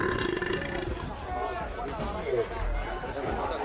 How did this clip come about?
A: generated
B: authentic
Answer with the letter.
B